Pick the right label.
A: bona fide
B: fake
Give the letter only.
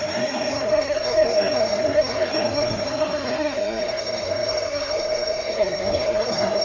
B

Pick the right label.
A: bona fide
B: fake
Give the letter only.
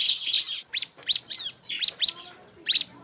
A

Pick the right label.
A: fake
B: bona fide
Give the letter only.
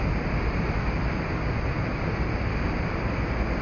B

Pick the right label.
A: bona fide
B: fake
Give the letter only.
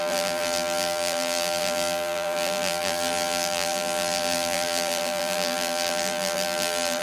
B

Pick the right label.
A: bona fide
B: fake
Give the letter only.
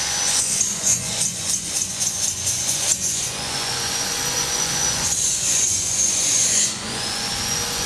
B